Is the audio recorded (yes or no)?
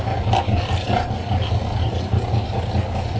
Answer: yes